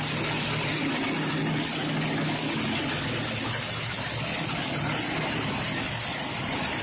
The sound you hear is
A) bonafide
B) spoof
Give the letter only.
A